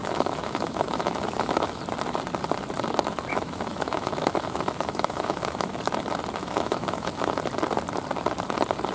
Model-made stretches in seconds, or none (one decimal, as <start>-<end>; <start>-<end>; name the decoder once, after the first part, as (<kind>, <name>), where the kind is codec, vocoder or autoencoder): 0.0-1.8 (autoencoder, DAC-VAE); 3.3-5.8; 6.4-7.3